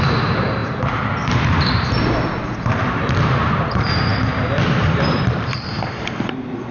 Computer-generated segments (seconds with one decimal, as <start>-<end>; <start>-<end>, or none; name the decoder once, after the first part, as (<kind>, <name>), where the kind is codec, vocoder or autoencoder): 0.0-6.7 (vocoder, BigVGAN v2)